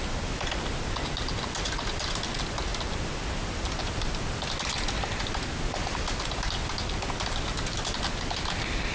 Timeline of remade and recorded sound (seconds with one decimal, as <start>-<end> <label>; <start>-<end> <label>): 0.0-8.9 recorded